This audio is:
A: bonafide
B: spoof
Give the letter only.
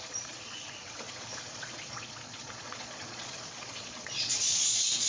B